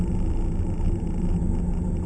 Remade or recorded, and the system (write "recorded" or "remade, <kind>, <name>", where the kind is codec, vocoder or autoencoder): recorded